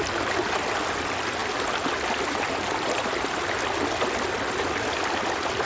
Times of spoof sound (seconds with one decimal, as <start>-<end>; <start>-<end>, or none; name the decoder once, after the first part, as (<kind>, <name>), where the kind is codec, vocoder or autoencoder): none